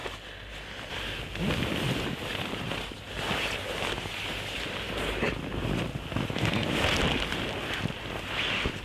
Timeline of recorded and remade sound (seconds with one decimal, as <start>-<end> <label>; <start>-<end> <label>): 0.0-8.8 recorded